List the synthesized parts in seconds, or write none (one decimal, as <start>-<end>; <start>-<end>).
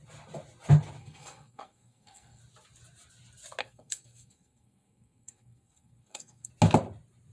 1.0-2.4; 3.6-6.5